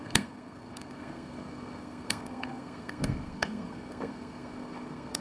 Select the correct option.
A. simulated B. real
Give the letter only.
A